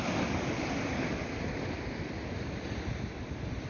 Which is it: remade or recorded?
recorded